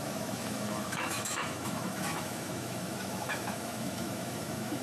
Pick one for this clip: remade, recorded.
remade